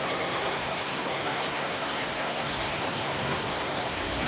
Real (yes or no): no